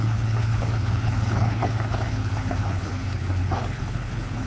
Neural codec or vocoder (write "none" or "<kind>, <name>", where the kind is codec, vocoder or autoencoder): codec, HILCodec